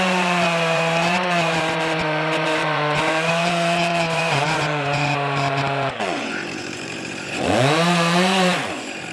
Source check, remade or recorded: remade